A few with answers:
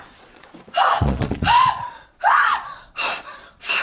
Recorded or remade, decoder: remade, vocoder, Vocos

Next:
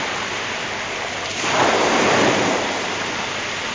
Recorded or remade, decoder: recorded